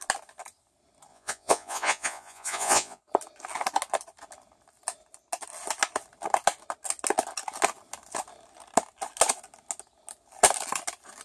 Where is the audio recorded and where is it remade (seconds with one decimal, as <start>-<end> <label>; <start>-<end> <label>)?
0.0-1.1 recorded; 1.1-3.0 remade; 3.0-11.2 recorded